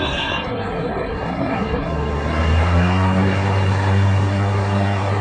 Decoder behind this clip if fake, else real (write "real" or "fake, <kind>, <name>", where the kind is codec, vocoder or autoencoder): fake, codec, SNAC